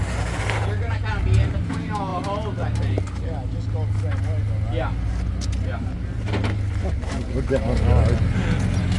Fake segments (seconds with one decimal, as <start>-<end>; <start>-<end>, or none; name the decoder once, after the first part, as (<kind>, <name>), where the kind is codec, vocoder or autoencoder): none